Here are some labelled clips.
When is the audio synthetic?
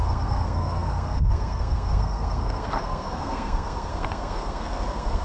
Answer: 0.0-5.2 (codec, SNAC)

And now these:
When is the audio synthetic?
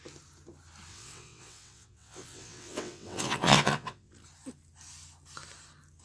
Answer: 0.9-4.1 (vocoder, WaveNeXt)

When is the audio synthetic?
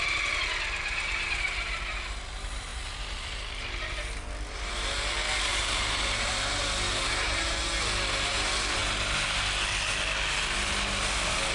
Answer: 2.7-3.4 (vocoder, BigVGAN v2); 5.5-6.3; 6.9-7.6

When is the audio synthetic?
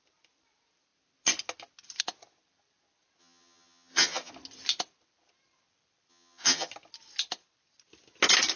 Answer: 3.2-4.3 (vocoder, HiFi-GAN); 6.1-6.7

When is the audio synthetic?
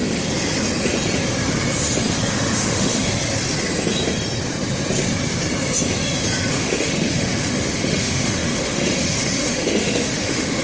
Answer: 2.3-3.1 (autoencoder, DAC-VAE); 6.5-10.6